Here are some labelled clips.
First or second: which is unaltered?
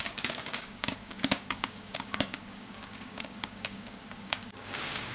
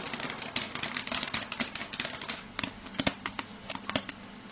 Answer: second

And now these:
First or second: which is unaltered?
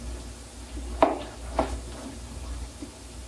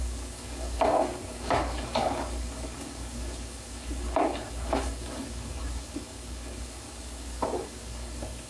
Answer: first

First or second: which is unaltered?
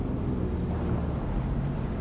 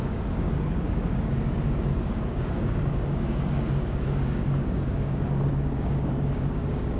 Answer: first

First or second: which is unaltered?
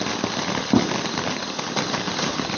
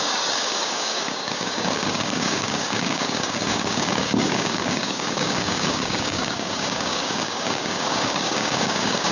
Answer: first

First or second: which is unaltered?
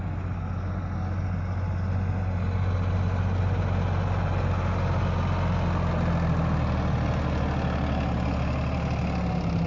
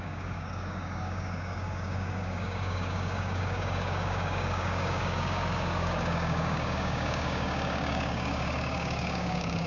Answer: first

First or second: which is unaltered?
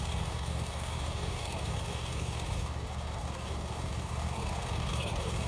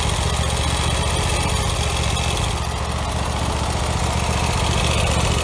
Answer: second